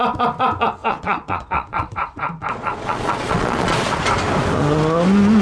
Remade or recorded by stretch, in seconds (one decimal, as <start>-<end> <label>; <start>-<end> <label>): 0.0-0.8 recorded; 0.8-4.0 remade; 4.0-5.4 recorded